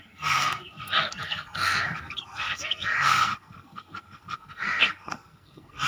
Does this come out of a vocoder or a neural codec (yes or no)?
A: yes